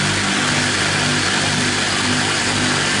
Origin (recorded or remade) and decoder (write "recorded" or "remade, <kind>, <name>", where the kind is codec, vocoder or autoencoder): recorded